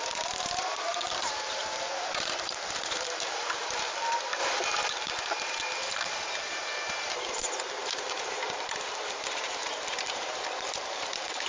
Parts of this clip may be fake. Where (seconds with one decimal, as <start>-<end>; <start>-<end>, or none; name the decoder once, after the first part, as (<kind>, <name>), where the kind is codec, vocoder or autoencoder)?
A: 0.0-4.4 (vocoder, BigVGAN v2); 4.9-11.5